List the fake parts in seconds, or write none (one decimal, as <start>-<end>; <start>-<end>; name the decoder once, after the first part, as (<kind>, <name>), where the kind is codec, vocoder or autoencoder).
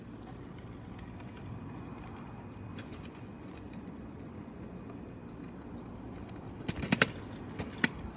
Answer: 2.7-4.8 (vocoder, Vocos)